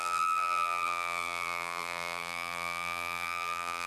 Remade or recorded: remade